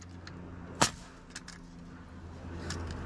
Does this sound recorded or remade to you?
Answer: recorded